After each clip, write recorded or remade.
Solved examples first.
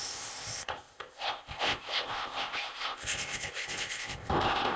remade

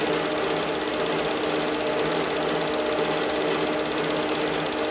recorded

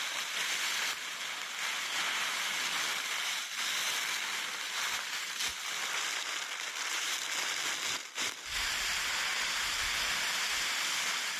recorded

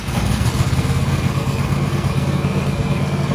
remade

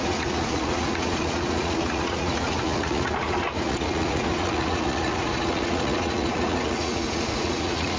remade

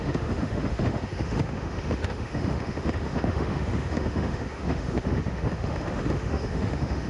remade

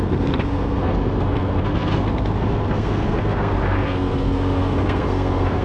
remade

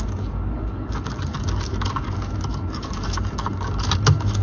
remade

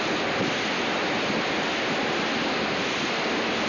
recorded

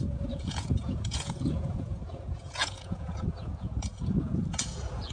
remade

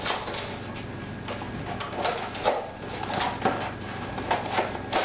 recorded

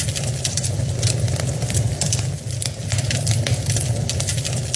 remade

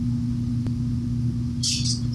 recorded